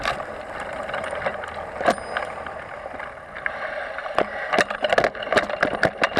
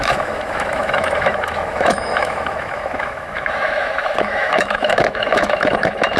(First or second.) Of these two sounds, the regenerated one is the second